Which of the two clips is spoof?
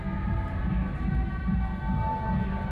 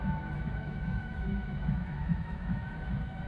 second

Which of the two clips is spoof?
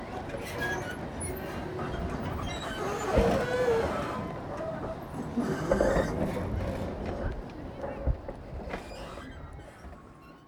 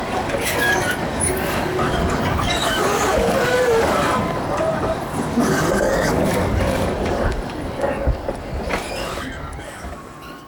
second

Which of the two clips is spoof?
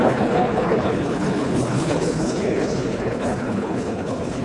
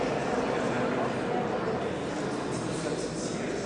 first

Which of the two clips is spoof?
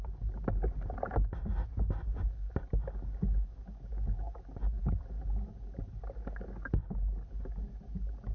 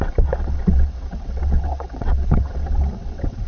second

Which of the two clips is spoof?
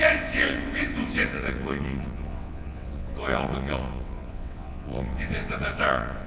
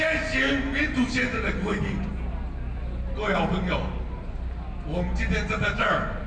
first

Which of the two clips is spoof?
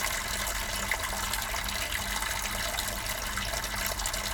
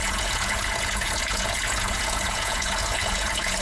second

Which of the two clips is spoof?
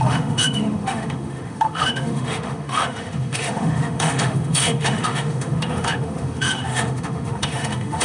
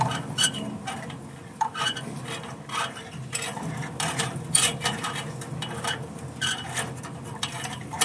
first